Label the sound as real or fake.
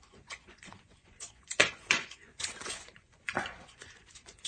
fake